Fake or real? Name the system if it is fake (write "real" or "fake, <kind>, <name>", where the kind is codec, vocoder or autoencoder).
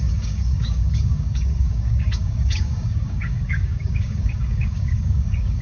fake, codec, DAC